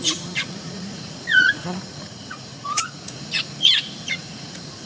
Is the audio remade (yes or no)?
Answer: yes